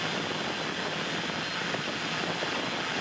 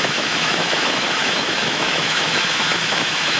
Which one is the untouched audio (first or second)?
first